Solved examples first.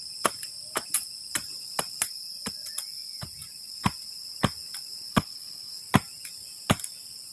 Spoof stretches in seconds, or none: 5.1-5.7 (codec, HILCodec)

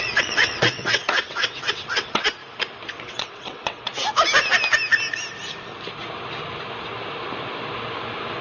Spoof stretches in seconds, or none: 0.0-2.4 (vocoder, WaveNeXt); 3.0-3.9

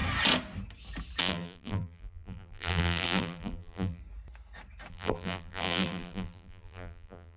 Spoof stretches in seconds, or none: 1.2-4.0 (vocoder, BigVGAN v2); 4.9-7.4

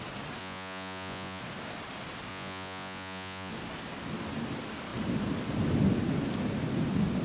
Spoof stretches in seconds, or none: 0.4-1.4 (vocoder, Vocos); 2.3-3.5